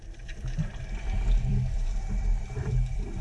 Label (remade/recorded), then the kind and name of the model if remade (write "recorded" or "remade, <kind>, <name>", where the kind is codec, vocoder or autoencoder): remade, vocoder, BigVGAN v2